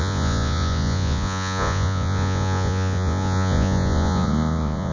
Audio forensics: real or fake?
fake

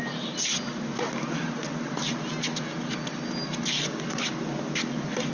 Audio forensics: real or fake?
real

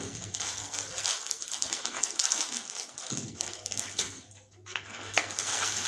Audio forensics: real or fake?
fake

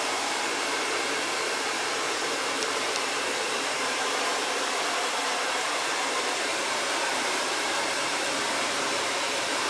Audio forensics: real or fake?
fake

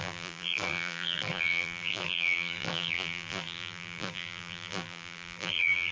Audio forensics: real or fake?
fake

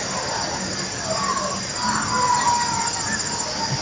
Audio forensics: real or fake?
real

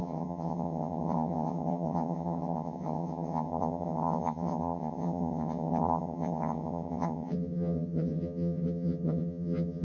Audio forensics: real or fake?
fake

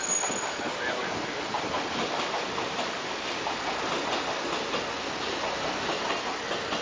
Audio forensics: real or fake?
real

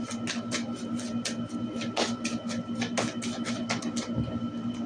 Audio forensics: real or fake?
real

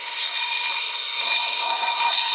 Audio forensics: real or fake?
fake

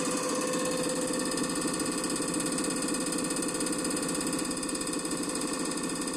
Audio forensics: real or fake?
real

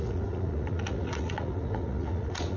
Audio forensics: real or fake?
fake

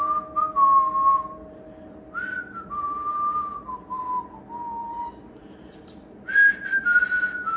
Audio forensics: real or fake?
real